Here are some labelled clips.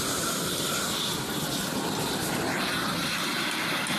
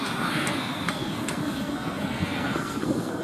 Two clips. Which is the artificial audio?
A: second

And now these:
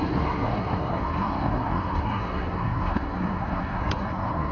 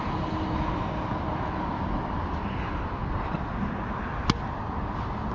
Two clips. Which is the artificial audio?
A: first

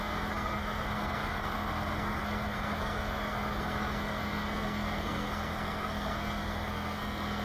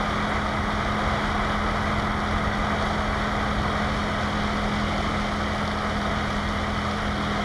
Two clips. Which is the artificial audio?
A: first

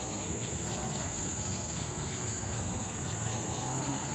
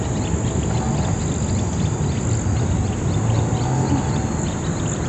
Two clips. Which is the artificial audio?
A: first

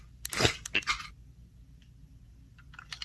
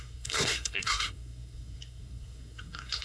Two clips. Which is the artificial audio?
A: second